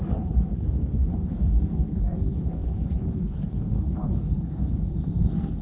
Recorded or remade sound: remade